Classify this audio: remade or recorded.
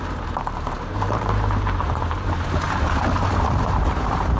remade